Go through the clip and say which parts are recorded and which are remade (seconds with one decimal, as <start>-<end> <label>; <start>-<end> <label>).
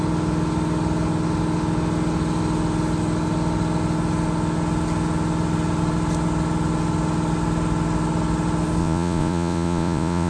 0.0-8.8 recorded; 8.8-10.3 remade